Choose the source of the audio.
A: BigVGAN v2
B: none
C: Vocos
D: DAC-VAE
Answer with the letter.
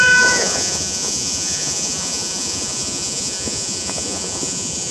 C